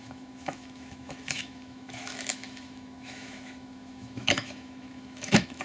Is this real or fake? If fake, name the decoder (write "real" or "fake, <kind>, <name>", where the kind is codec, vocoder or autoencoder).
fake, autoencoder, DAC-VAE